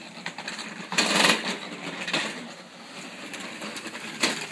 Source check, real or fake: fake